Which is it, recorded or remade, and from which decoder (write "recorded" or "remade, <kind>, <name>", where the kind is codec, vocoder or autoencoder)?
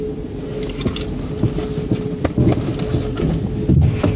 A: recorded